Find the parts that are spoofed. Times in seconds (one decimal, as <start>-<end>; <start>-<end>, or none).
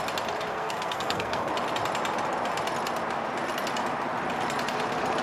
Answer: 0.5-1.5